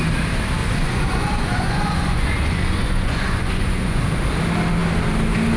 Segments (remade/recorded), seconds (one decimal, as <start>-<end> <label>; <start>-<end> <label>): 0.0-0.6 recorded; 0.6-4.0 remade; 4.0-5.6 recorded